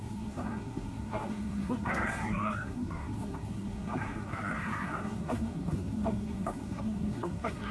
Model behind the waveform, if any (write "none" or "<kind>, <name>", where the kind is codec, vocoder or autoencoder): codec, SNAC